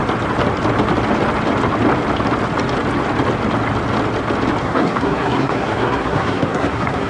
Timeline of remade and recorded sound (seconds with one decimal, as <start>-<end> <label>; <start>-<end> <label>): 0.0-4.6 recorded; 4.6-7.1 remade